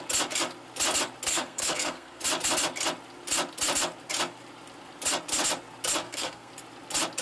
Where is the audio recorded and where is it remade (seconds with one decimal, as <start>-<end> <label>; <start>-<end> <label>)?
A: 0.0-1.3 recorded; 1.3-2.2 remade; 2.2-6.0 recorded; 6.0-6.5 remade; 6.5-7.2 recorded